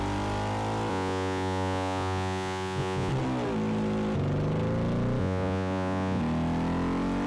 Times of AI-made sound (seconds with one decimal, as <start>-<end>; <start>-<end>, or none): 0.9-3.1; 5.2-6.2